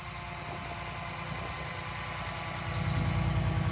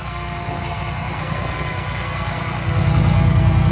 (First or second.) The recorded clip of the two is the first